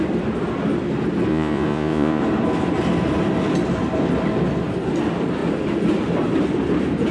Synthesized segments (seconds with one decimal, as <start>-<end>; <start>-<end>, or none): 1.3-2.2